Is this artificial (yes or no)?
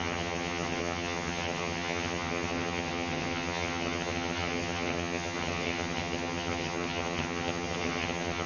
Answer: yes